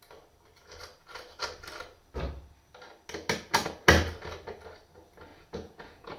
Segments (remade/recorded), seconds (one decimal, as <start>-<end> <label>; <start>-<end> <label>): 0.0-5.3 recorded; 5.3-6.2 remade